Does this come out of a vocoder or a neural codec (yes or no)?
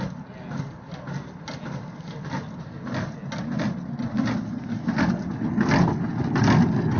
no